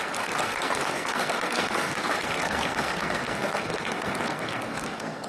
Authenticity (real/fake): fake